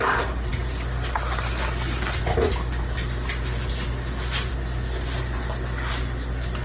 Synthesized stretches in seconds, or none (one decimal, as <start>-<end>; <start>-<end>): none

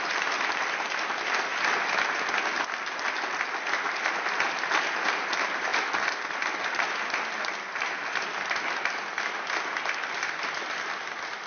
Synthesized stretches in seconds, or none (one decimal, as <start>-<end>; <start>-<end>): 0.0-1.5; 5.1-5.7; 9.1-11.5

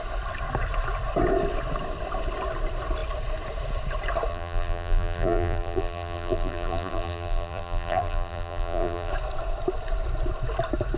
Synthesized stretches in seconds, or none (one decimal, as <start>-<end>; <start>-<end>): 4.3-9.1

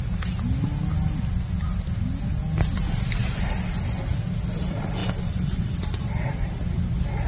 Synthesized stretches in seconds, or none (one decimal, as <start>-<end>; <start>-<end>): 5.0-6.2

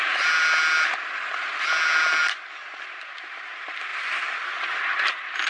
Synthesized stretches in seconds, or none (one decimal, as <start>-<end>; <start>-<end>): none

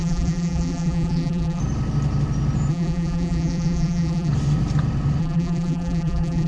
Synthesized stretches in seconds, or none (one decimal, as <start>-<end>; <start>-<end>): 0.0-1.6; 2.7-4.3; 5.2-6.5

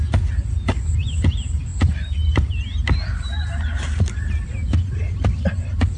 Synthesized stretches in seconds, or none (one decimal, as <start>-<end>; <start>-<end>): 1.7-2.5